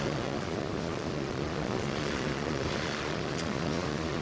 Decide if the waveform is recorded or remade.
remade